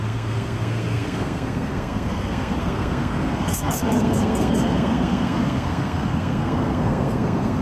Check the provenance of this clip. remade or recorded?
remade